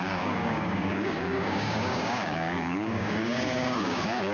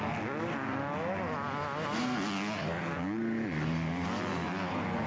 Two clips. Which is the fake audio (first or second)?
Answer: first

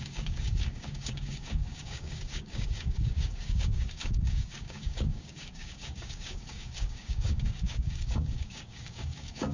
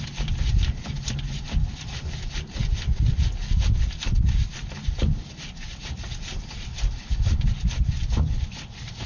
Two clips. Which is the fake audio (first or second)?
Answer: first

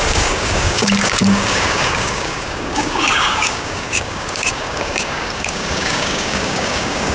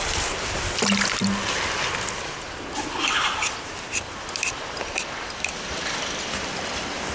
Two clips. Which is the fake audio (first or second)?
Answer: first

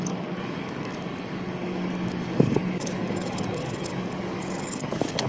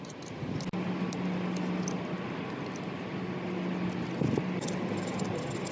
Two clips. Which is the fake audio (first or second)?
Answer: first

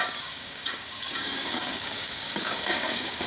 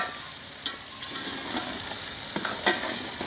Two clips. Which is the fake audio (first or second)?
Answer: first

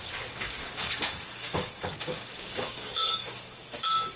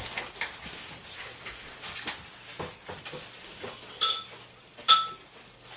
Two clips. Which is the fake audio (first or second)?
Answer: first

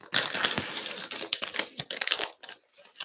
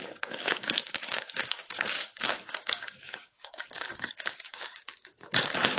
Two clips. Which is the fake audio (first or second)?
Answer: second